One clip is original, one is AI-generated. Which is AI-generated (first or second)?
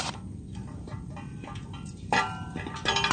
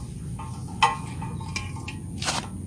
first